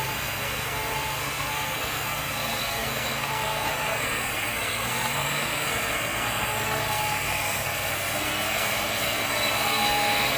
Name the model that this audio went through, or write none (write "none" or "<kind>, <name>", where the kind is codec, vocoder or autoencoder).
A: codec, SNAC